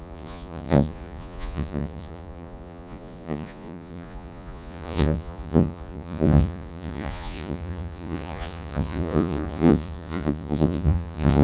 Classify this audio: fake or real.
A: fake